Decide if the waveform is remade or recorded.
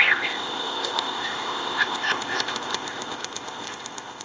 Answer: remade